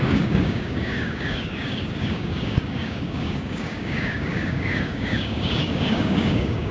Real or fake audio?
fake